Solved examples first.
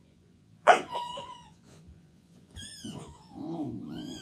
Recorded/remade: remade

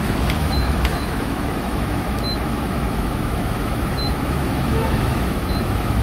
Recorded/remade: remade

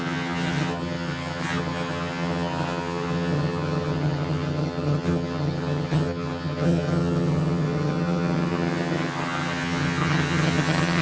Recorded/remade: remade